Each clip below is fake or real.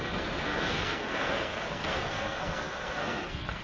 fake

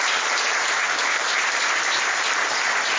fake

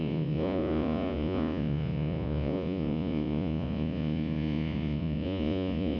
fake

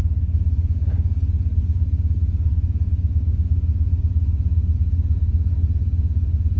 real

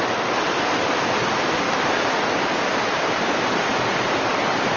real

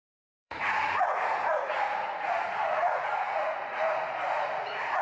fake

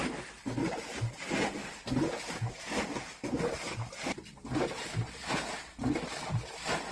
real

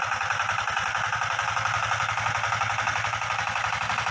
real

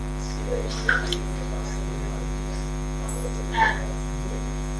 real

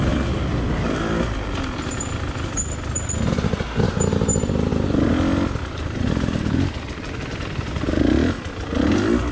real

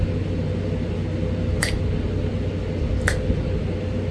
real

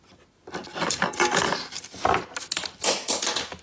real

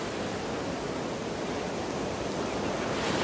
real